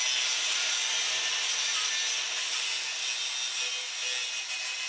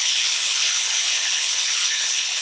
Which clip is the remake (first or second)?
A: second